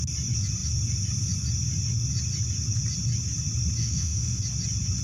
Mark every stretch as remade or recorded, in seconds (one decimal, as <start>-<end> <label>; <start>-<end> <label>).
0.0-3.8 recorded; 3.8-4.4 remade; 4.4-5.0 recorded